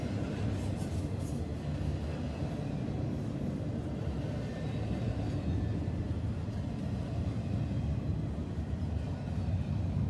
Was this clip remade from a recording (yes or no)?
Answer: no